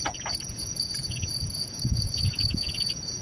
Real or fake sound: fake